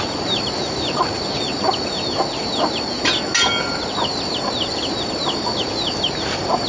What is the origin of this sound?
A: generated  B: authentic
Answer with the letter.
B